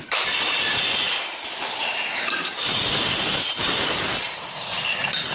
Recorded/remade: remade